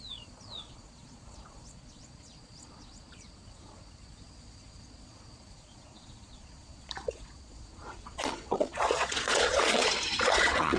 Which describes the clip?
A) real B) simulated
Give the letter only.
B